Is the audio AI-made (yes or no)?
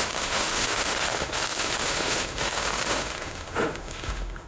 yes